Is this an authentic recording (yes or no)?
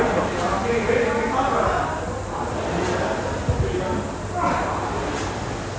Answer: yes